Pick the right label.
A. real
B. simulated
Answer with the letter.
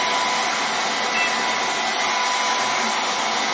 A